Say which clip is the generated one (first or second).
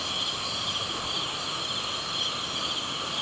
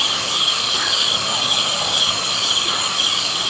second